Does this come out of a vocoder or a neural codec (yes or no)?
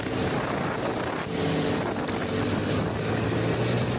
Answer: no